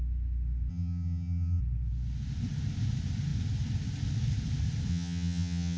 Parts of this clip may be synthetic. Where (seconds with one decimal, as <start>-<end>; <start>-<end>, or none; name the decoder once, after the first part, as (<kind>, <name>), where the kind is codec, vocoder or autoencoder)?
0.7-1.6 (vocoder, HiFi-GAN); 4.9-5.8